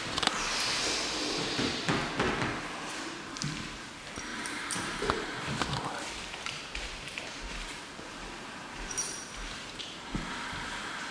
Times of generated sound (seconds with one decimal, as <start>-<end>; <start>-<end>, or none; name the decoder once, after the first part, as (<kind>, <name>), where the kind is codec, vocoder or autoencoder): 4.3-5.4 (vocoder, BigVGAN v2); 8.6-9.2